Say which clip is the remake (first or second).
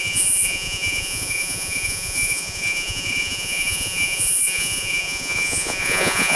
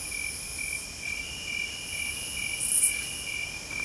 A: first